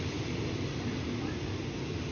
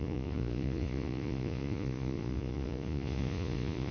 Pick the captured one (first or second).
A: first